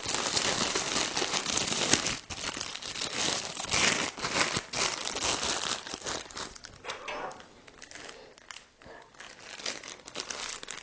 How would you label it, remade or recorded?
recorded